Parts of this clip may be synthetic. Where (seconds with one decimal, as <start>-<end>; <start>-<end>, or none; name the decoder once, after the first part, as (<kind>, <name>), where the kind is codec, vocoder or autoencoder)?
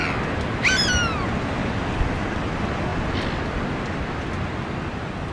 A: none